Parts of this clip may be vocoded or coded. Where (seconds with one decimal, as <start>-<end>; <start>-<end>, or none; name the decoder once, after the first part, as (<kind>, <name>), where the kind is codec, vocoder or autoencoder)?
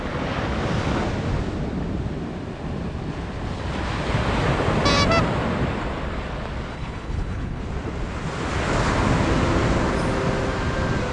6.7-7.6 (codec, HILCodec)